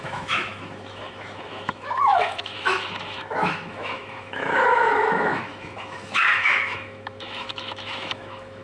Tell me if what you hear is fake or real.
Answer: fake